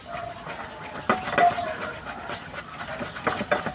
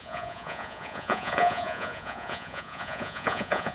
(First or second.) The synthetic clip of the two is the second